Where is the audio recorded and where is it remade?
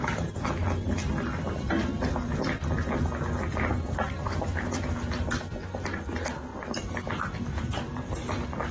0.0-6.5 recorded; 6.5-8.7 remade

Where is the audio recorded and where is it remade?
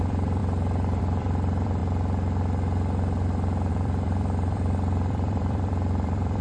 0.0-0.4 remade; 0.4-1.0 recorded; 1.0-1.8 remade; 1.8-3.7 recorded; 3.7-6.4 remade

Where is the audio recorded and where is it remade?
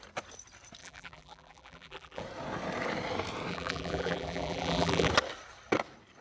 0.0-0.8 recorded; 0.8-2.2 remade; 2.2-3.5 recorded; 3.5-5.1 remade; 5.1-6.2 recorded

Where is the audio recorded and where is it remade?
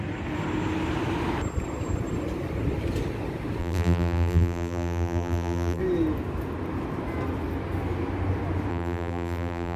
0.0-3.6 recorded; 3.6-5.8 remade; 5.8-8.7 recorded; 8.7-9.8 remade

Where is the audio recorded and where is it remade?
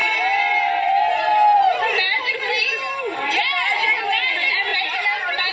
0.0-3.3 remade; 3.3-4.7 recorded; 4.7-5.5 remade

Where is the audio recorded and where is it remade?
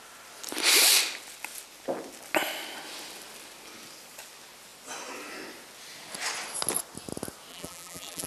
0.0-7.5 recorded; 7.5-8.3 remade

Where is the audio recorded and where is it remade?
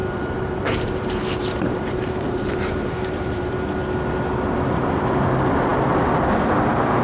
0.0-3.8 remade; 3.8-7.0 recorded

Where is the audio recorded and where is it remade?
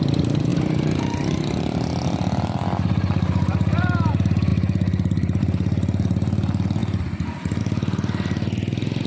0.0-9.1 recorded